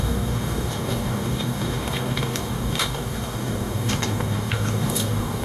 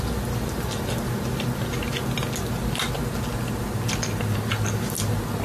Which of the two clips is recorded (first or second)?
second